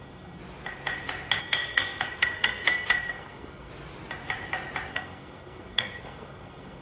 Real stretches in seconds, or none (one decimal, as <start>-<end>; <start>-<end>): 0.4-1.4; 3.7-4.9